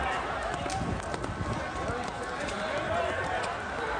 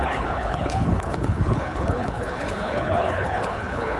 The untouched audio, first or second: first